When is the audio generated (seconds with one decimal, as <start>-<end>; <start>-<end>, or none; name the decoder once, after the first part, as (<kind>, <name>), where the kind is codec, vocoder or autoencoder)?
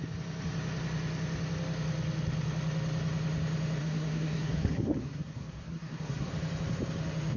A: 3.8-6.3 (codec, SNAC)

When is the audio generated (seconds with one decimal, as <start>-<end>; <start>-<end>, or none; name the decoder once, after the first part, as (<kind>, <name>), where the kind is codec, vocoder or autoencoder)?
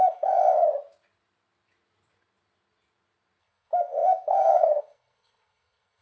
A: 0.0-0.4 (codec, SNAC); 3.4-6.0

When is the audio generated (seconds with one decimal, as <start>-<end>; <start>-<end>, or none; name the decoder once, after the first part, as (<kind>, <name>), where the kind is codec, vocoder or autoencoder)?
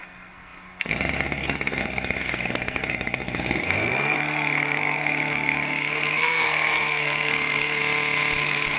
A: 0.0-7.8 (codec, SNAC); 8.4-8.8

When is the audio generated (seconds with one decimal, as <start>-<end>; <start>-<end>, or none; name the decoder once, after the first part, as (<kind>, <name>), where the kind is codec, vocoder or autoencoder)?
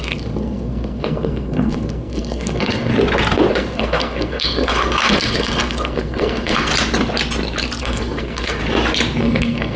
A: 0.0-2.9 (codec, SNAC); 3.5-6.7; 7.8-8.6; 9.2-9.8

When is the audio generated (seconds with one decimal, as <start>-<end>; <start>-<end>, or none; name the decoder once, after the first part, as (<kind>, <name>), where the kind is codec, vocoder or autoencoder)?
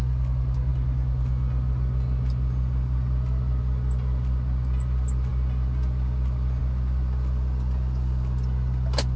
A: none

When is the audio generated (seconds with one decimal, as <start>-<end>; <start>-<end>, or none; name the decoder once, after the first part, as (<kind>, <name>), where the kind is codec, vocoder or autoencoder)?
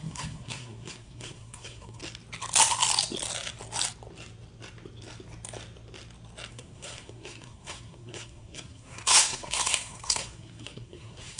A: 0.0-2.0 (codec, SNAC); 6.5-11.4